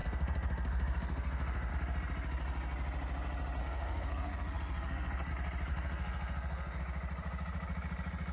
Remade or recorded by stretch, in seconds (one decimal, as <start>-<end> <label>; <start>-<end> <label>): 0.0-1.7 remade; 1.7-3.6 recorded; 3.6-5.3 remade; 5.3-5.7 recorded; 5.7-6.8 remade; 6.8-8.3 recorded